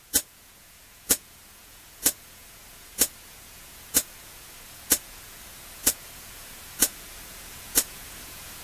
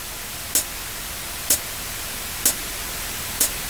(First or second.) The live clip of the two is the second